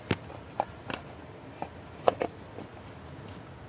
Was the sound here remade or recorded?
recorded